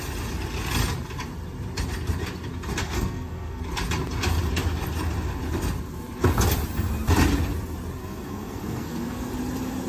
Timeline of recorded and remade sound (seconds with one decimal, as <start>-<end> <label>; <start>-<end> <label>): 0.0-2.8 recorded; 2.8-3.6 remade; 3.6-8.0 recorded; 8.0-9.3 remade; 9.3-9.9 recorded